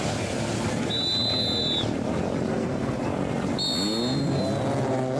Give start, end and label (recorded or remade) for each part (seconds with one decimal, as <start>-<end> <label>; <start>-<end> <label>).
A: 0.0-2.5 recorded; 2.5-3.0 remade; 3.0-5.2 recorded